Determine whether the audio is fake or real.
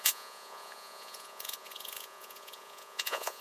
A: fake